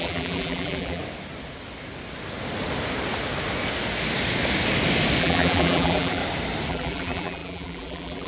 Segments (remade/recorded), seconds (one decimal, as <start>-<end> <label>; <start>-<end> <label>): 0.0-1.0 remade; 1.0-5.2 recorded; 5.2-6.2 remade; 6.2-6.7 recorded; 6.7-8.3 remade

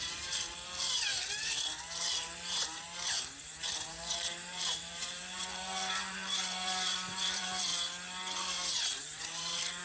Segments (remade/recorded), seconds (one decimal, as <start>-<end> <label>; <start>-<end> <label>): 0.0-7.7 remade; 7.7-9.0 recorded; 9.0-9.8 remade

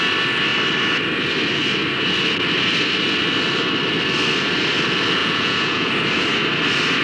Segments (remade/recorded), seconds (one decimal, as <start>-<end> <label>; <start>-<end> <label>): 0.0-5.2 recorded; 5.2-5.9 remade; 5.9-7.0 recorded

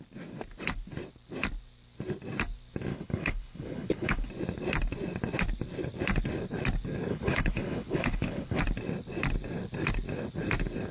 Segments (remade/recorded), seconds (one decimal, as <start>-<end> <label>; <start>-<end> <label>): 0.0-2.9 recorded; 2.9-4.3 remade; 4.3-7.1 recorded; 7.1-8.6 remade; 8.6-10.9 recorded

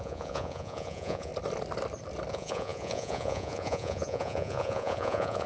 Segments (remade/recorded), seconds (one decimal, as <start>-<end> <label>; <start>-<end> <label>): 0.0-1.3 remade; 1.3-2.3 recorded; 2.3-5.5 remade

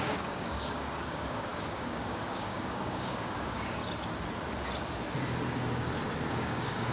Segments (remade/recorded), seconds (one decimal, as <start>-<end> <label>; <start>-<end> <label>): 0.0-3.8 remade; 3.8-6.3 recorded; 6.3-6.9 remade